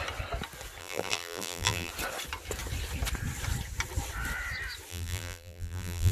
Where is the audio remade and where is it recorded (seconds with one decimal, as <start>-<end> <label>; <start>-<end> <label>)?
0.0-0.8 recorded; 0.8-1.9 remade; 1.9-4.9 recorded; 4.9-6.1 remade